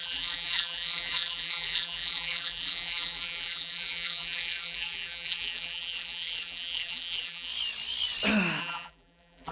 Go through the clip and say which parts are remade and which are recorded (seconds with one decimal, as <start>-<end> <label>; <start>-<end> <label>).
0.0-7.5 remade; 7.5-8.6 recorded; 8.6-9.5 remade